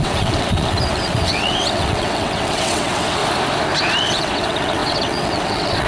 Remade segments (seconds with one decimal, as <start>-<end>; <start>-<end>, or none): 0.0-3.2; 4.0-5.9